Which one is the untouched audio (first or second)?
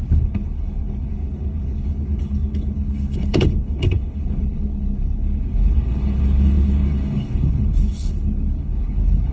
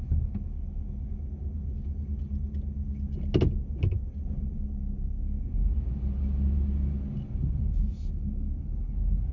second